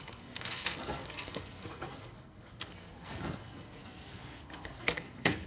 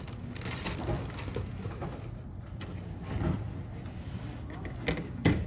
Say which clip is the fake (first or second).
first